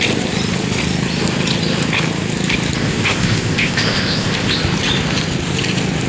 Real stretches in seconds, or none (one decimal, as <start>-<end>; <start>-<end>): 0.0-2.8; 4.6-6.1